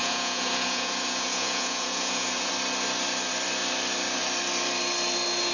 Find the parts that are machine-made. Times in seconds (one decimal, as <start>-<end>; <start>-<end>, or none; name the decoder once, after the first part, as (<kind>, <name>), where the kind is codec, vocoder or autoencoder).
0.0-2.5 (vocoder, Vocos)